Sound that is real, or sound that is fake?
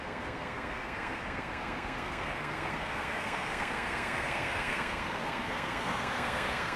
fake